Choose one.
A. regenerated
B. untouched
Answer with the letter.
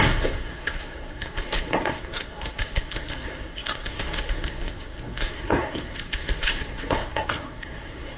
A